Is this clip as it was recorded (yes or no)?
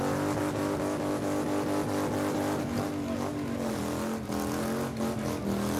yes